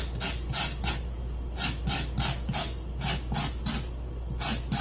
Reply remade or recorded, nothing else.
recorded